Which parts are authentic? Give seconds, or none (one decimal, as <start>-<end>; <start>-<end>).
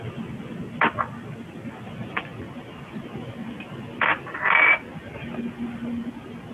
0.0-6.5